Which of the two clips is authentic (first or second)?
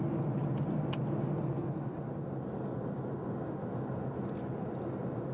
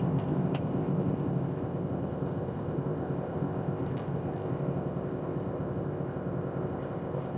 first